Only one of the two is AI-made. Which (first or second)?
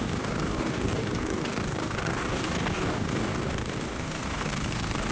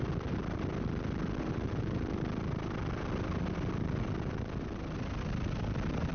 first